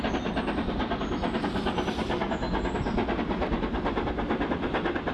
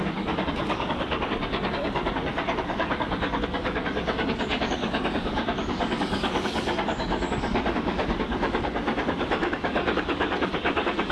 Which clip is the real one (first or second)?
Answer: first